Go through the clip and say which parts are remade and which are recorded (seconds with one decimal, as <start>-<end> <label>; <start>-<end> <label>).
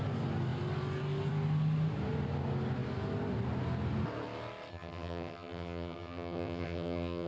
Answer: 0.0-4.7 recorded; 4.7-7.3 remade